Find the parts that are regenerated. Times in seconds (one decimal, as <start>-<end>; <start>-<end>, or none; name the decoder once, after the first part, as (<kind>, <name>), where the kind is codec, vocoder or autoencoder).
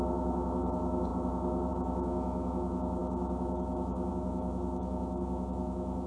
0.0-6.1 (autoencoder, DAC-VAE)